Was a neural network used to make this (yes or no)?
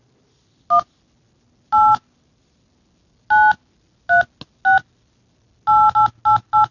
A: no